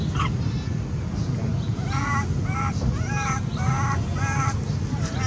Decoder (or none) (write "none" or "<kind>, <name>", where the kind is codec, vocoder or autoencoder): none